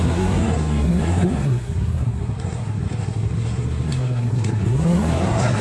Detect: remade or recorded remade